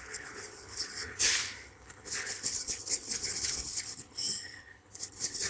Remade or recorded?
remade